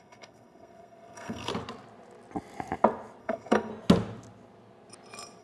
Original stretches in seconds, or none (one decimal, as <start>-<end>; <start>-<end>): 1.5-3.2; 3.7-5.4